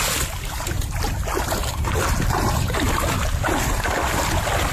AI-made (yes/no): no